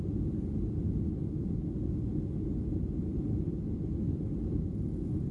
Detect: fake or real real